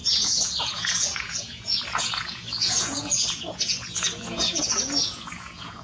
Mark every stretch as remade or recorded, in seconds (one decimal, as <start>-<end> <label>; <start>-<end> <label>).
0.0-5.8 remade